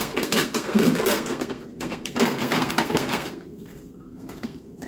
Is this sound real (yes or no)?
no